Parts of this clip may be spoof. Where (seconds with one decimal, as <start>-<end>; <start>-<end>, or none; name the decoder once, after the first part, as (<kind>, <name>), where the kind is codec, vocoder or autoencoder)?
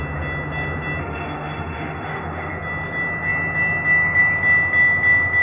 1.0-2.5 (autoencoder, DAC-VAE)